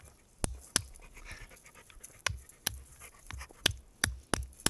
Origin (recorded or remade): recorded